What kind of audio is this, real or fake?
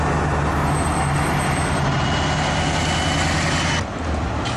real